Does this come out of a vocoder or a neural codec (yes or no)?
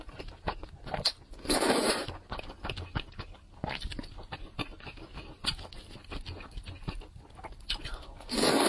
no